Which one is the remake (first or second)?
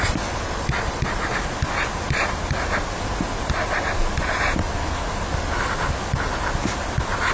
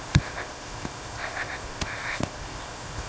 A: second